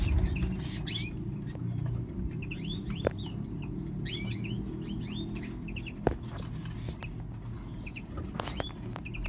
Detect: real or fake real